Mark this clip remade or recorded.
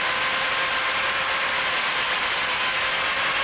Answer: recorded